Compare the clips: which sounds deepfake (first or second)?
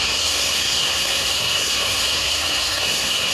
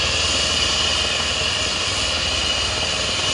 first